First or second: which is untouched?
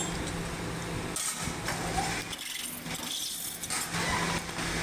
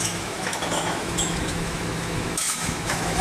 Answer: first